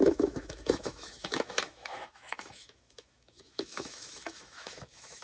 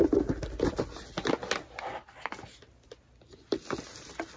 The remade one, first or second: first